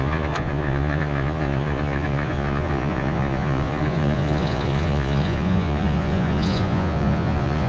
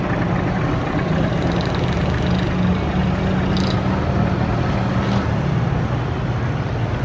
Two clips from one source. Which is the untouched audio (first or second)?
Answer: second